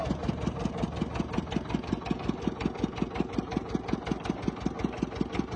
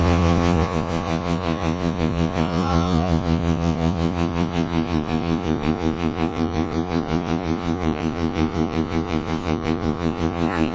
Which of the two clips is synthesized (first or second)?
second